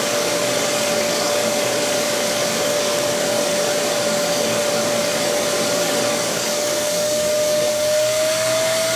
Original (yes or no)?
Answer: no